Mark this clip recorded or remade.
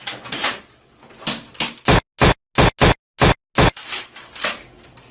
recorded